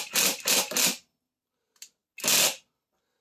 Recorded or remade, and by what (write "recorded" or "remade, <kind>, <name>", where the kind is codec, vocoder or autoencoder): recorded